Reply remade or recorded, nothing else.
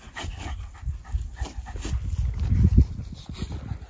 recorded